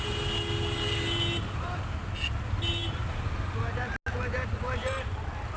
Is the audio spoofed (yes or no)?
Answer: no